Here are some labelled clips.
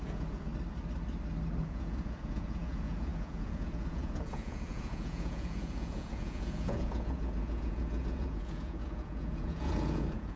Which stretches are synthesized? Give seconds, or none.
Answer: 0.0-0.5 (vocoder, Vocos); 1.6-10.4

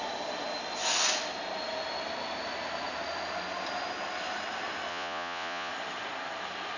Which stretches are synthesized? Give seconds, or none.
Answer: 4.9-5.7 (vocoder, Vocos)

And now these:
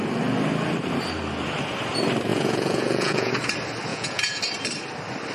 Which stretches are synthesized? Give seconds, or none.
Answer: 2.3-3.3 (vocoder, Vocos); 3.9-4.4